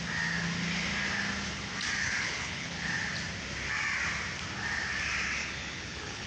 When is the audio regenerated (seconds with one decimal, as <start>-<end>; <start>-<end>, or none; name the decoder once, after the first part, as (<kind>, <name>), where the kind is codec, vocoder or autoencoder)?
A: 2.0-2.9 (codec, HILCodec); 5.4-6.3